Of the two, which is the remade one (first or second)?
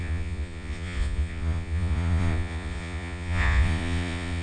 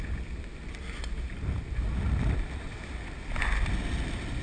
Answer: first